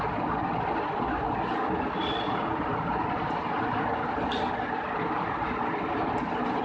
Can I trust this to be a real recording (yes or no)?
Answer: yes